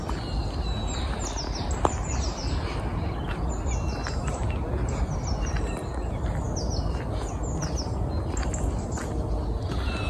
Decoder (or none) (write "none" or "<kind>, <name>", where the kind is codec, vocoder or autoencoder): none